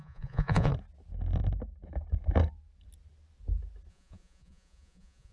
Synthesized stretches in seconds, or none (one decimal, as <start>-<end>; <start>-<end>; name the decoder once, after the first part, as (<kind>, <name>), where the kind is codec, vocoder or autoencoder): 0.0-0.7 (vocoder, Vocos); 3.9-5.3